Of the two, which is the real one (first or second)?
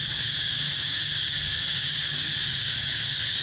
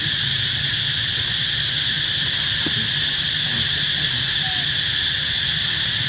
second